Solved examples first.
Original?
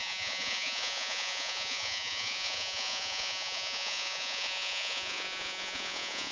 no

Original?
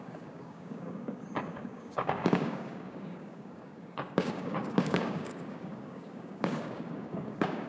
no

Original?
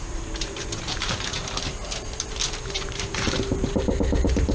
no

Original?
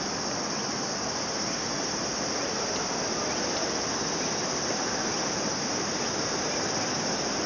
yes